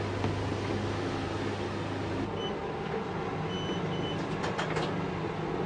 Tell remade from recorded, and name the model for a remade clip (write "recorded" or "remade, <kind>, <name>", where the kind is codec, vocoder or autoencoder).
recorded